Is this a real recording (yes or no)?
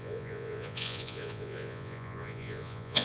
no